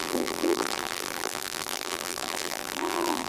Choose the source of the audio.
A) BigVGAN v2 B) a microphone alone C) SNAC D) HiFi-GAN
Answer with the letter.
A